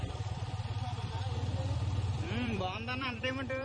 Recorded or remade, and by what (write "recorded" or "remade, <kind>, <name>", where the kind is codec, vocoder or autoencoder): remade, vocoder, BigVGAN v2